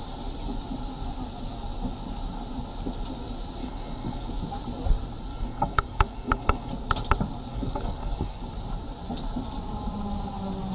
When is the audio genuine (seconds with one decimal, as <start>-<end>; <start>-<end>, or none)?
0.0-3.6; 4.3-5.3; 6.7-7.5; 8.4-10.7